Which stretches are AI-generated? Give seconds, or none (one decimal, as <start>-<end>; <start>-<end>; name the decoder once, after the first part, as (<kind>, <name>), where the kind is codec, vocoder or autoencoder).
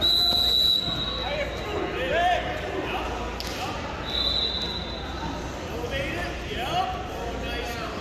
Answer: none